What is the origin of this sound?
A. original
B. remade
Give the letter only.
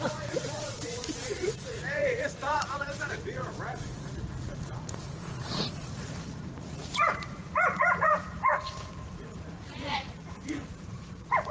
B